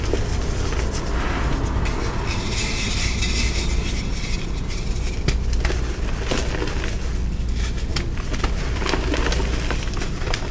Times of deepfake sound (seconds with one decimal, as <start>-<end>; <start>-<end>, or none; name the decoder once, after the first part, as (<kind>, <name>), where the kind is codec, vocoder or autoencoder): none